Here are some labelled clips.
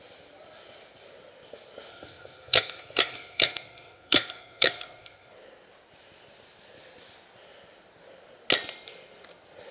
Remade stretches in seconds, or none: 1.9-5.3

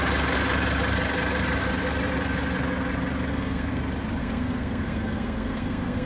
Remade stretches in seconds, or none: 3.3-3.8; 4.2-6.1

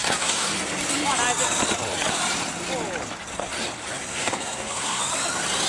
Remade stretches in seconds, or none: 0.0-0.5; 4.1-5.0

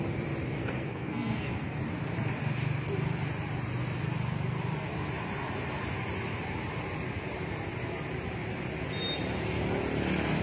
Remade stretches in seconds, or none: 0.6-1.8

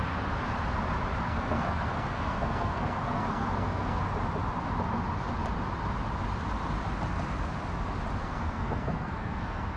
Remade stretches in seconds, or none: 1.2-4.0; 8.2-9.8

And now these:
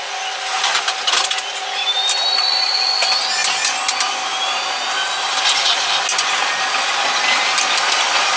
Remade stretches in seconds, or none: none

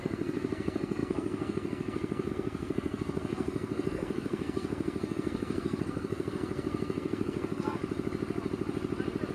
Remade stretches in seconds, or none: 0.0-7.8

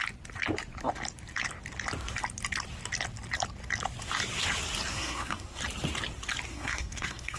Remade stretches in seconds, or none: 4.9-5.6; 6.5-7.4